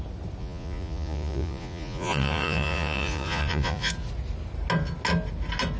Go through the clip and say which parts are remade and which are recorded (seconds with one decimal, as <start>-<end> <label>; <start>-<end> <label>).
0.0-0.4 recorded; 0.4-3.9 remade; 3.9-5.8 recorded